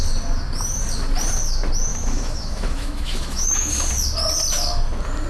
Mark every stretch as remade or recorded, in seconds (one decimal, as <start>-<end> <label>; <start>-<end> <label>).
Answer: 0.0-1.9 recorded; 1.9-3.7 remade; 3.7-5.3 recorded